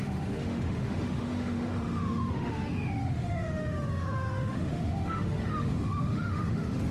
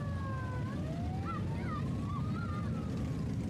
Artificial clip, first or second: first